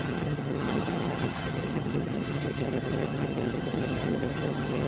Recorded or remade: remade